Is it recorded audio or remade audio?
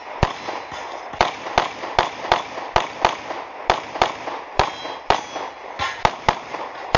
recorded